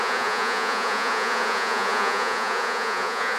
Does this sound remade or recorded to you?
remade